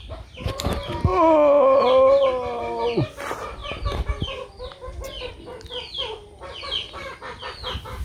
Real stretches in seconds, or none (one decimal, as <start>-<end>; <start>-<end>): 0.0-8.0